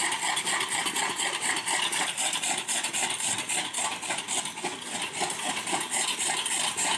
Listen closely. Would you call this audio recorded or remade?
recorded